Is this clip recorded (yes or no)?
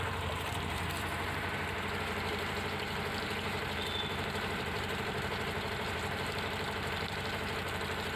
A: no